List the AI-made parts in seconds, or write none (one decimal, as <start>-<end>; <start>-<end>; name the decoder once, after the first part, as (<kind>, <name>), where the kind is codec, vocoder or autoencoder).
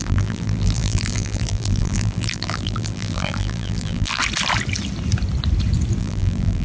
0.0-4.2 (vocoder, BigVGAN v2); 6.0-6.6